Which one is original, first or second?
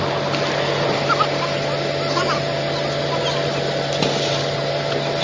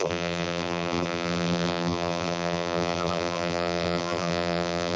first